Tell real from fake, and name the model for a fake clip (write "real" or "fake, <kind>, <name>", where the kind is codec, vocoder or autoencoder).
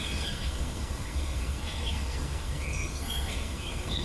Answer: fake, codec, SNAC